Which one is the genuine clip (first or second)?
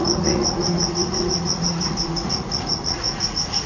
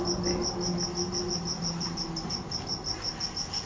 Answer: second